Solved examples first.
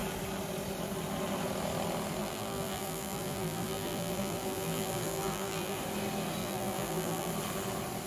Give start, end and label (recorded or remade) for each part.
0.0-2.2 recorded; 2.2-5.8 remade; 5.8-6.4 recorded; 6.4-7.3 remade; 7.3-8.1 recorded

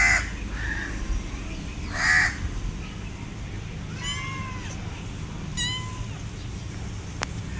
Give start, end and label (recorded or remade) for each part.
0.0-7.6 recorded

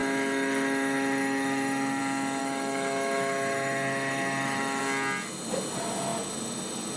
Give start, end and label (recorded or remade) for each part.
0.0-2.0 remade; 2.0-2.4 recorded; 2.4-4.8 remade; 4.8-7.0 recorded

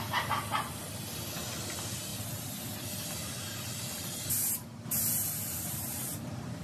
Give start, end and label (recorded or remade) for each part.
0.0-6.6 recorded

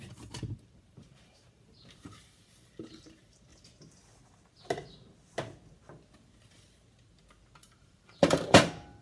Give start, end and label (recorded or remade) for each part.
0.0-3.5 remade; 3.5-7.6 recorded; 7.6-9.0 remade

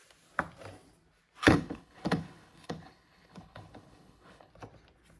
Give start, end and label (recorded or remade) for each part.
0.0-1.4 recorded; 1.4-4.5 remade; 4.5-5.2 recorded

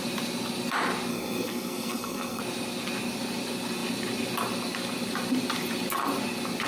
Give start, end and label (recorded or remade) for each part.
0.0-1.1 recorded; 1.1-2.4 remade; 2.4-6.7 recorded

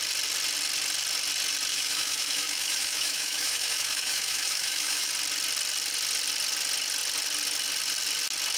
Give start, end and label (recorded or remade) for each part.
0.0-1.7 recorded; 1.7-5.1 remade; 5.1-8.6 recorded